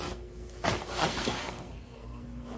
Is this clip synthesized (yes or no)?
yes